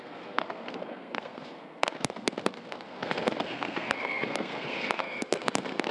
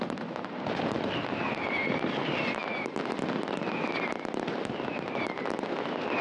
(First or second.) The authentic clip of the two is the second